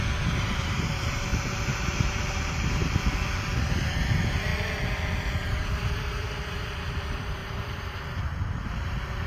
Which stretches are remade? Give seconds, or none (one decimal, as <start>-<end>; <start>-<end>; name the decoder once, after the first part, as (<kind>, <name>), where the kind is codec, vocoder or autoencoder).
0.0-1.3 (vocoder, BigVGAN v2); 2.2-2.8; 4.0-4.5; 5.3-9.3